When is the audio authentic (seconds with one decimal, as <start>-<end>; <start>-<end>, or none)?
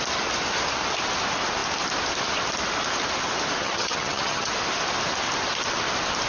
0.0-3.6; 4.5-6.3